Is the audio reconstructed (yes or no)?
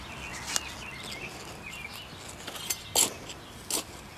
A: no